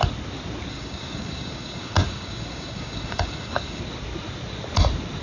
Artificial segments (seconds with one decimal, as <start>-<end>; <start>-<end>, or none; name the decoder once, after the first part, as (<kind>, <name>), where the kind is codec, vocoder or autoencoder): 0.7-3.8 (codec, DAC)